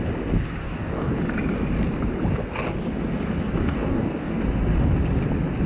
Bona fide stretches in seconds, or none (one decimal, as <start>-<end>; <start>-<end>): 0.0-0.6; 1.1-3.6; 4.4-5.7